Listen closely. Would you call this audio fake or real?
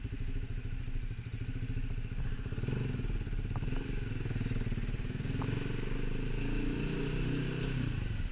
real